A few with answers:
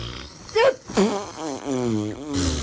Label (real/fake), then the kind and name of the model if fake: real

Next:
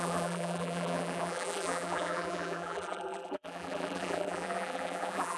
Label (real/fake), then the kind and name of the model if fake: fake, vocoder, BigVGAN v2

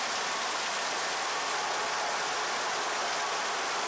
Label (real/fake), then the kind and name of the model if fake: real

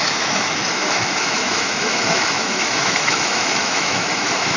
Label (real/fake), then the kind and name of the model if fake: fake, autoencoder, DAC-VAE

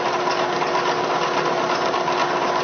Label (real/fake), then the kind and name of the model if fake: real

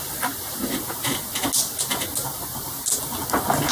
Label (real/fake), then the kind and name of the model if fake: real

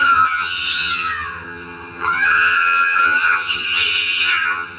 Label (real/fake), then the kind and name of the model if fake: fake, vocoder, HiFi-GAN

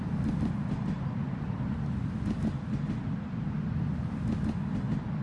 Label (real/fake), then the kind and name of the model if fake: real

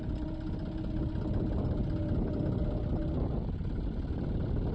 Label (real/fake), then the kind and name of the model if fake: real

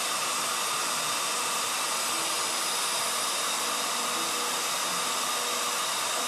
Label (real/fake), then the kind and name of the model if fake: real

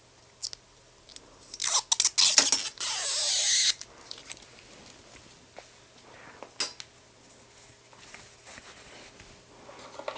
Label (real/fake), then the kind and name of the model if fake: real